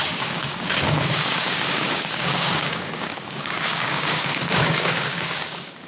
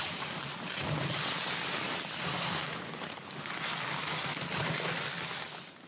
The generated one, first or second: first